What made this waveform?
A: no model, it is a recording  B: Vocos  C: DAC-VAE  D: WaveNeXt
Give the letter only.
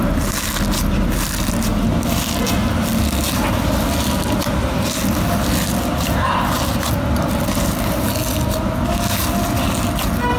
A